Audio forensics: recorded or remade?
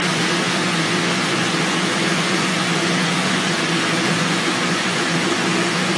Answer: remade